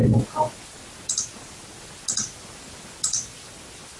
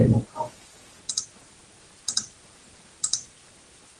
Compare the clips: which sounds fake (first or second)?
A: second